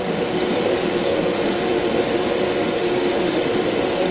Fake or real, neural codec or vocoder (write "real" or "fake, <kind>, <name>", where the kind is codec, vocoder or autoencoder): fake, autoencoder, DAC-VAE